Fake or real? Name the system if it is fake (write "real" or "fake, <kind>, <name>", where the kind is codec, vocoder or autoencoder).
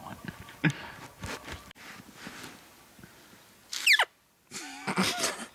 real